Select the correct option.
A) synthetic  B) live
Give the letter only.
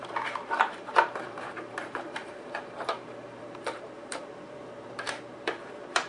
A